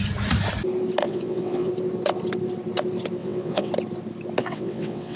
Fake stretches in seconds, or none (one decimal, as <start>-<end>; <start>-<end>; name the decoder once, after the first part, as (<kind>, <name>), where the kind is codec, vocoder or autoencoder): 1.0-1.7 (vocoder, WaveNeXt); 3.2-3.7; 4.4-5.2